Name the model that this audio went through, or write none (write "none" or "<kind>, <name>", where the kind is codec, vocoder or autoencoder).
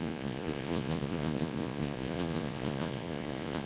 vocoder, Vocos